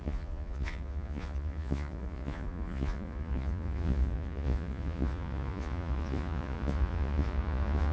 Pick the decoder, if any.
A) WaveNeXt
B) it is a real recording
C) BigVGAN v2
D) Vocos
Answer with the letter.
D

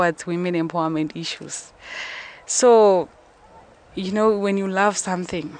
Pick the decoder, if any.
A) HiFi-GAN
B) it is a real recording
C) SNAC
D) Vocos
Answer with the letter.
B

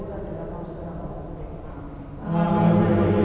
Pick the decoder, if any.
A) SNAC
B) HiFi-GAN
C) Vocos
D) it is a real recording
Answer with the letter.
D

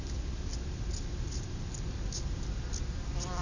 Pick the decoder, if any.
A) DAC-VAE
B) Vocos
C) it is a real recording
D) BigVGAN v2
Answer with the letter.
C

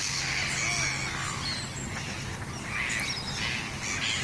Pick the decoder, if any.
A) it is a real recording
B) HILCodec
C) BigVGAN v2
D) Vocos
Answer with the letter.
A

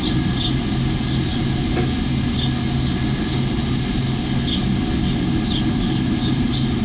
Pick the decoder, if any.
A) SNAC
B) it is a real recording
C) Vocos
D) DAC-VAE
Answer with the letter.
B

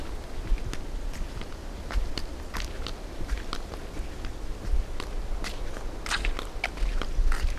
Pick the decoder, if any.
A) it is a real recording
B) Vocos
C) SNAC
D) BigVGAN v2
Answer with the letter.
A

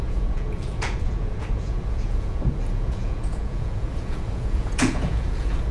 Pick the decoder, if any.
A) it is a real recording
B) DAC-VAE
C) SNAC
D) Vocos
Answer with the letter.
D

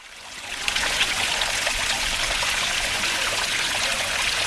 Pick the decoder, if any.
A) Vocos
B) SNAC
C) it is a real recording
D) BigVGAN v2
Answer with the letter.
A